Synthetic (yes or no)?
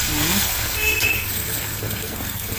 yes